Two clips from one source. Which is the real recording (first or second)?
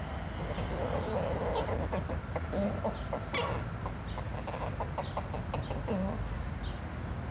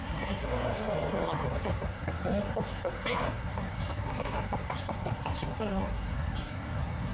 first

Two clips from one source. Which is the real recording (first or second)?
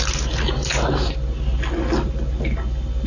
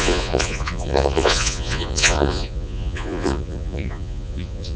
first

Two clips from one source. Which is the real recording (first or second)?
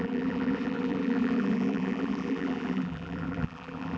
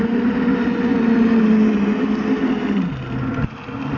second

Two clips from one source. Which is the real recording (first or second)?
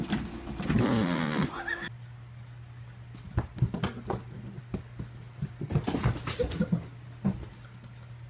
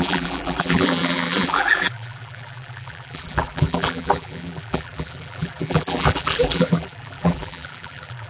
first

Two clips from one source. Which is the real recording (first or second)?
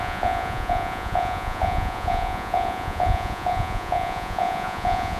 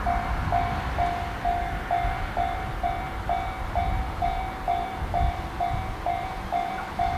second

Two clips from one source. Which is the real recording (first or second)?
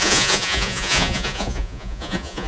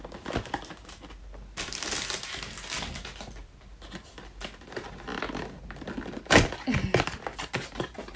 second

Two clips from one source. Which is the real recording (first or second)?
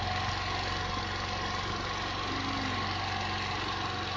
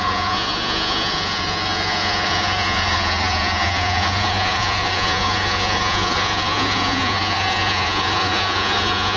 first